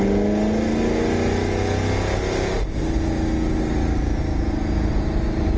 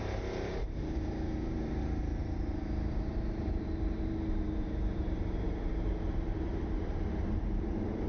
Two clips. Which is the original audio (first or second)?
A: first